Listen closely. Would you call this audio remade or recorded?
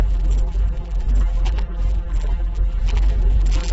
remade